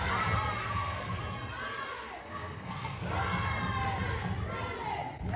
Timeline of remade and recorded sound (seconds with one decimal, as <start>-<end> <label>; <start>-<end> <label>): 0.0-0.6 recorded; 0.6-1.2 remade; 1.2-2.2 recorded; 2.2-3.0 remade; 3.0-5.4 recorded